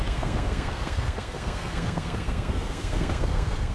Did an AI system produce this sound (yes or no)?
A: yes